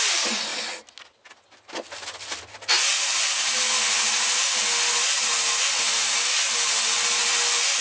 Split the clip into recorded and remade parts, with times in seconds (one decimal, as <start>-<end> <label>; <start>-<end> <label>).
0.0-7.8 recorded